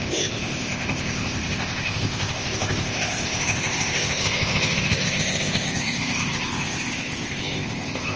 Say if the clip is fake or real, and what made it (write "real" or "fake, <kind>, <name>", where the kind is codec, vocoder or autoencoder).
fake, codec, ZipCodec